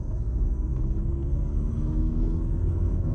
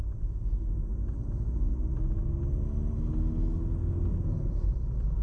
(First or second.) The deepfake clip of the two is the first